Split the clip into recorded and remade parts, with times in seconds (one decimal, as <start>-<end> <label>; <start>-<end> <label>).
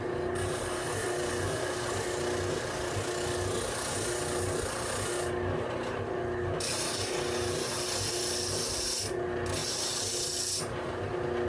0.0-11.5 recorded